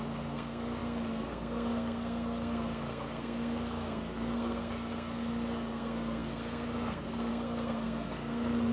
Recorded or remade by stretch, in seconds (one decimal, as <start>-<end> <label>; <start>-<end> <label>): 0.0-8.7 remade